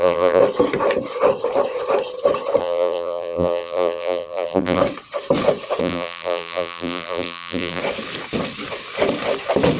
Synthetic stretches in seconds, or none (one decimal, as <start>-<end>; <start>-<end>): 0.0-0.4; 2.6-4.8; 5.8-7.8